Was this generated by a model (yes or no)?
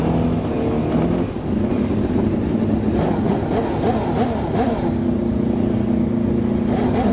no